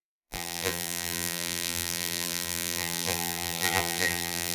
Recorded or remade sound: remade